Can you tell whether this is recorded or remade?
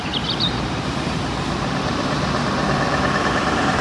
remade